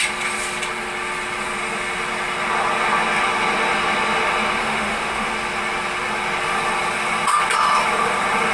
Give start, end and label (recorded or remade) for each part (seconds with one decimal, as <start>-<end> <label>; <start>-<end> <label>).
0.0-4.6 recorded; 4.6-5.3 remade; 5.3-8.5 recorded